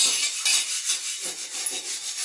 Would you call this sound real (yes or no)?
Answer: yes